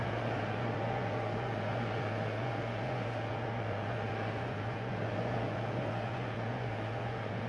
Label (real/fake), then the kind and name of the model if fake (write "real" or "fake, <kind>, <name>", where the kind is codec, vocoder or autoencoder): fake, vocoder, Vocos